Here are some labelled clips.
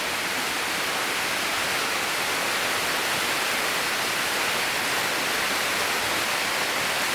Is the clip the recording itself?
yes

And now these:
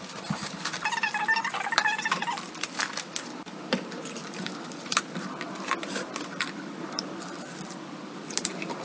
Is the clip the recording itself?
no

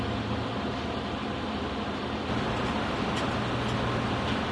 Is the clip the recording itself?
yes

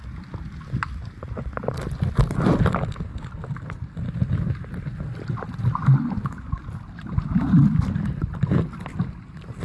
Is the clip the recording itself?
yes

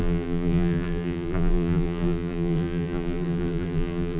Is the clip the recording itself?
no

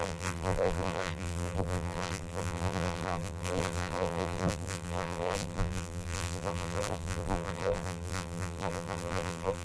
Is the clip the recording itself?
no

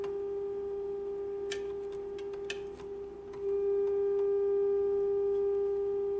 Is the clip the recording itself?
yes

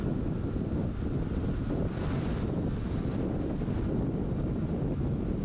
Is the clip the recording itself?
yes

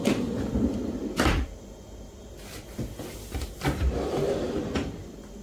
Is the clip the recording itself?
yes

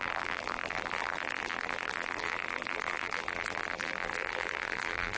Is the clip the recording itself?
no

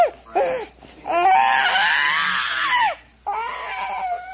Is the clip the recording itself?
yes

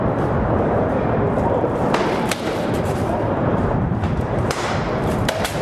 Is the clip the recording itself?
no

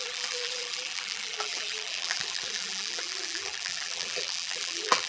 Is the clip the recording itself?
no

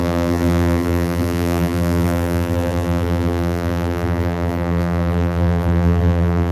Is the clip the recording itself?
no